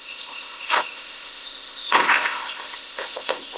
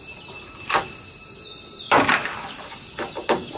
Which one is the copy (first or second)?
first